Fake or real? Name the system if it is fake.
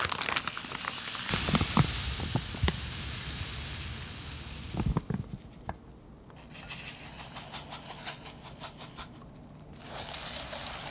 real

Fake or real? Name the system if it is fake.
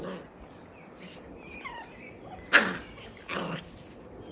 real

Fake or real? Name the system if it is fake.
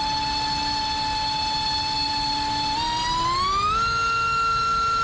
real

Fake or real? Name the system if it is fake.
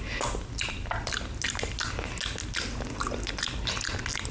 real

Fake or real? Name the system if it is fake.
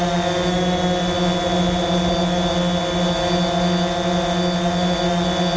real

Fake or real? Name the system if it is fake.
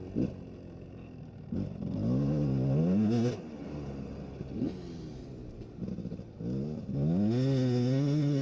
real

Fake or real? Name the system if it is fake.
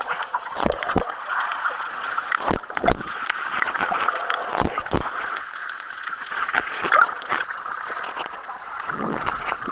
fake, vocoder, Vocos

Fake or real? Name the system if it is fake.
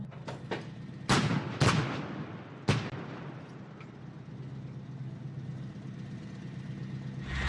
real